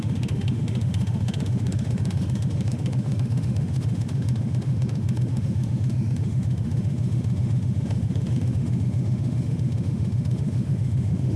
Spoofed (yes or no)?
yes